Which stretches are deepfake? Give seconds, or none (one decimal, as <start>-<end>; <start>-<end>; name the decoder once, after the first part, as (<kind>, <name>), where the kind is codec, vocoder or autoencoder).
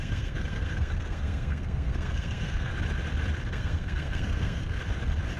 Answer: 0.0-2.7 (codec, SNAC); 3.5-4.8